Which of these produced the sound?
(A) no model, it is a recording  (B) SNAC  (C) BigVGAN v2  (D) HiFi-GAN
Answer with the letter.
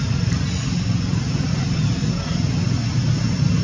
A